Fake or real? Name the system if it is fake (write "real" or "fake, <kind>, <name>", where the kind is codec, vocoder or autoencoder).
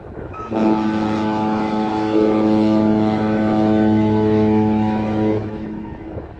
fake, autoencoder, DAC-VAE